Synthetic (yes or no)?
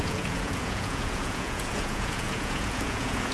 yes